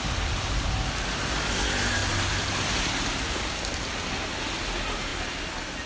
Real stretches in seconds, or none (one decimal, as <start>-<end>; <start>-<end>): 0.0-5.9

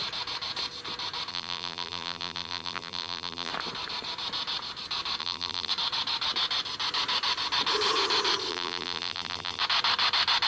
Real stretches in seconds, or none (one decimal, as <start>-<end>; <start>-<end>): 0.0-1.3; 3.5-5.2; 5.7-8.5; 9.6-10.5

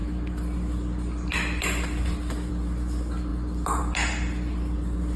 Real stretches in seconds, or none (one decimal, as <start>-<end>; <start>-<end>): 0.0-5.2

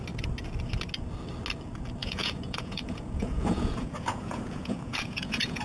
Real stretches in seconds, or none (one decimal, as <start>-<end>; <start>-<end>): 0.0-2.0